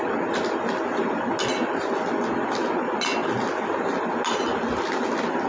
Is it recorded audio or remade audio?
recorded